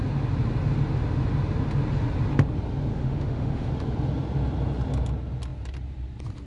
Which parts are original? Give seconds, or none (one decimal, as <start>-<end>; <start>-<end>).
0.0-2.9; 3.7-6.5